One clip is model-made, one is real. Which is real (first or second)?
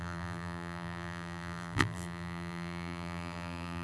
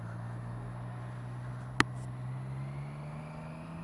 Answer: second